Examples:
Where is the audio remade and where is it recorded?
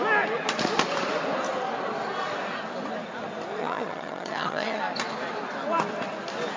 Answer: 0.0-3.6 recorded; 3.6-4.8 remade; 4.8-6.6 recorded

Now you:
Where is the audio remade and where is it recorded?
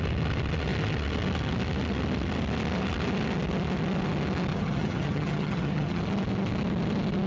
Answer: 0.0-4.5 recorded; 4.5-6.0 remade; 6.0-7.3 recorded